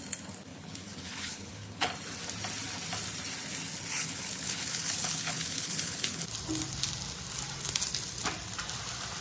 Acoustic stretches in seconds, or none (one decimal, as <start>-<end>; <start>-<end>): 0.0-0.5; 1.9-3.9; 6.2-9.2

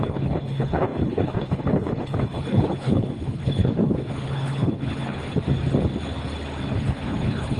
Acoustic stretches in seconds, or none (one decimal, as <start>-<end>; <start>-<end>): 5.3-6.7

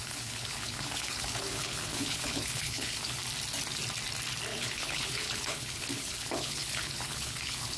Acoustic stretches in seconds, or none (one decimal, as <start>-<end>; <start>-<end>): 3.2-4.5

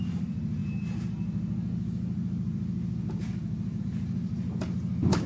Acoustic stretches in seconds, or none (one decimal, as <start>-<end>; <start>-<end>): 0.0-5.3

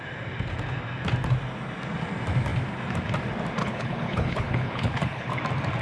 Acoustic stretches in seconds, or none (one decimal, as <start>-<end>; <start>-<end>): 0.0-3.6; 5.3-5.8

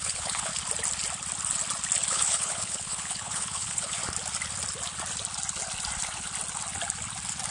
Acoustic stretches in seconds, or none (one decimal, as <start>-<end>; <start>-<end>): 0.5-2.1; 4.0-7.5

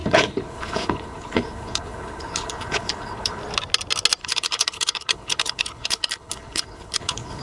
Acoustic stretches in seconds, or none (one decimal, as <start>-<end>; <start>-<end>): 3.4-4.2